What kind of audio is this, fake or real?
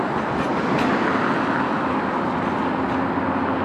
real